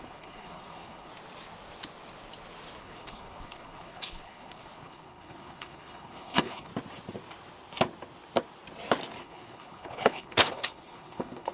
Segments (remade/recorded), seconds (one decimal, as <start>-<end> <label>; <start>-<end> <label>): 0.0-1.1 remade; 1.1-2.8 recorded; 2.8-6.7 remade; 6.7-9.2 recorded; 9.2-11.5 remade